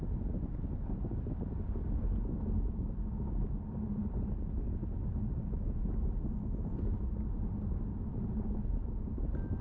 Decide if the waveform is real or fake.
real